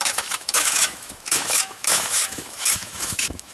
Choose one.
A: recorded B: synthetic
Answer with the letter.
B